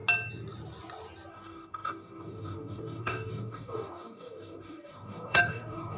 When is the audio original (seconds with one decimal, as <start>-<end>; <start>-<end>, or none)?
0.0-1.3